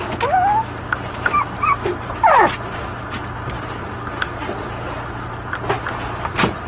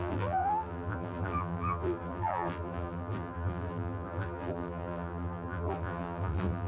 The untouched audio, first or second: first